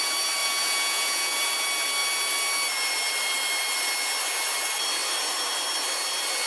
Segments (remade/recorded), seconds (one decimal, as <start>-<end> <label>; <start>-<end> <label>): 0.0-0.4 recorded; 0.4-1.4 remade; 1.4-6.5 recorded